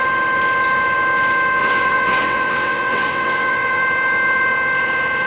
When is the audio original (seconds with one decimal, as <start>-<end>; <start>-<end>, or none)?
0.0-1.6; 3.8-5.3